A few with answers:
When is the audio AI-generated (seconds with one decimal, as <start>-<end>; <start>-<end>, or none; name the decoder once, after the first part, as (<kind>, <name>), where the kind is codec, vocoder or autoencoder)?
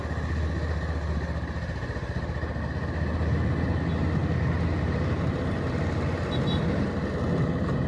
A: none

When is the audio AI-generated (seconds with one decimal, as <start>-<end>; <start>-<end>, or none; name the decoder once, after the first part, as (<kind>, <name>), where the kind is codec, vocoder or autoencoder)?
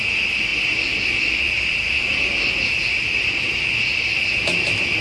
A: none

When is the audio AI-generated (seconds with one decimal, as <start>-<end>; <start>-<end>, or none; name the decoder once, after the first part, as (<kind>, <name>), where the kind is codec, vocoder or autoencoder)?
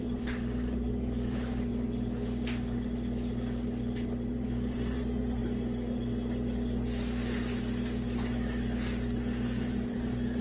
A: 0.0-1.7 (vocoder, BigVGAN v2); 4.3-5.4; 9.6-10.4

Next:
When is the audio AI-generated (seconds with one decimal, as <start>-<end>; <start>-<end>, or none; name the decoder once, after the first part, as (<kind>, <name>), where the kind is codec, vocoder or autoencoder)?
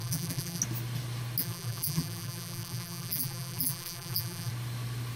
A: 0.0-0.6 (vocoder, BigVGAN v2); 1.4-4.5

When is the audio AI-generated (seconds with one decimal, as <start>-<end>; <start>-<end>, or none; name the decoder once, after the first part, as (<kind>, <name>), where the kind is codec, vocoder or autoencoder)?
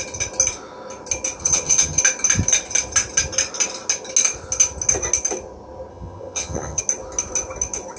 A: 1.4-2.0 (vocoder, HiFi-GAN); 5.9-6.8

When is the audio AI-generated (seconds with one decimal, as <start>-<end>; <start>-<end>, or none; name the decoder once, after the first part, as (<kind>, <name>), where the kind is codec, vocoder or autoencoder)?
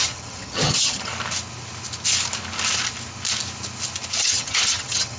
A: 0.0-1.1 (vocoder, HiFi-GAN); 4.2-5.2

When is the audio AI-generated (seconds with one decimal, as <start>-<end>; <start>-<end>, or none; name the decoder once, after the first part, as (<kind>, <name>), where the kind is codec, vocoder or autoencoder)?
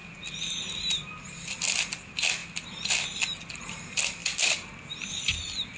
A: none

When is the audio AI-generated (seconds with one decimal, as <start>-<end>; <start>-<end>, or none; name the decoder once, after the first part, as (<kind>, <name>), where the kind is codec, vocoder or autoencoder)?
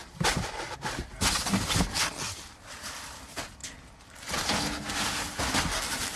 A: 0.0-1.0 (vocoder, BigVGAN v2)